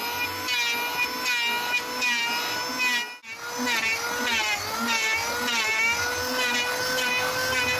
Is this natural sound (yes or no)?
yes